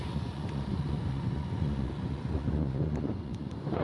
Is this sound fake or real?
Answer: fake